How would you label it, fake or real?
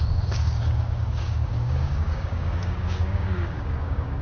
fake